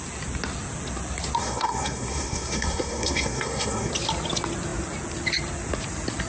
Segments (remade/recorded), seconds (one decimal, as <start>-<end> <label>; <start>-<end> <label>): 0.0-1.4 recorded; 1.4-3.9 remade; 3.9-6.3 recorded

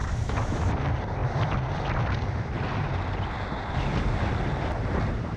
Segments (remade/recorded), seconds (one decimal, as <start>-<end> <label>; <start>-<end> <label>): 0.0-0.7 remade; 0.7-5.4 recorded

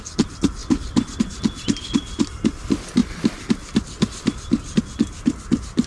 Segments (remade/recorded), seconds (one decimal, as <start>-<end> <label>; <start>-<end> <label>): 0.0-5.9 recorded